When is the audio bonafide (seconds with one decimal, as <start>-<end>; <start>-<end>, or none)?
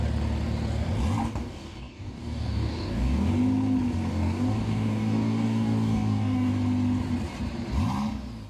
0.0-1.2; 3.3-4.1; 6.5-8.5